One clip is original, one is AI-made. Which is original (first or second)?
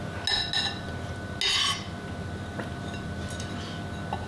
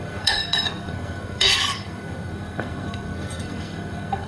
first